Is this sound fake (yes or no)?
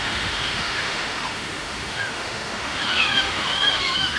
yes